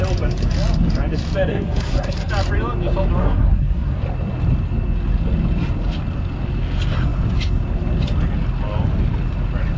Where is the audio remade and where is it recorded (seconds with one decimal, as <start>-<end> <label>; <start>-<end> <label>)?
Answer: 0.0-1.5 recorded; 1.5-2.3 remade; 2.3-3.2 recorded; 3.2-4.0 remade; 4.0-9.8 recorded